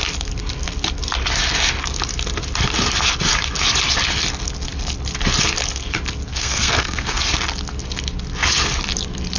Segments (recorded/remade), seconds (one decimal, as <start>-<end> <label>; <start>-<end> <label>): 0.0-6.3 recorded; 6.3-7.2 remade; 7.2-9.4 recorded